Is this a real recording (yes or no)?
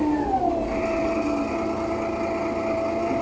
yes